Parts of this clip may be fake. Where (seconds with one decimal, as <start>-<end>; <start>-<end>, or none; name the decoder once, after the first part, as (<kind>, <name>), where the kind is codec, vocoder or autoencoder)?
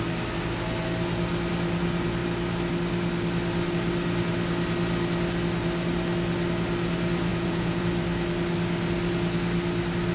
7.3-7.8 (vocoder, Vocos)